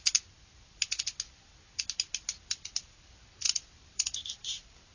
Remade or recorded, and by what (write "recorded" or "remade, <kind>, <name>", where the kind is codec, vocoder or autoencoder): recorded